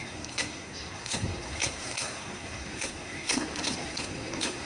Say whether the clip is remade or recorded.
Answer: remade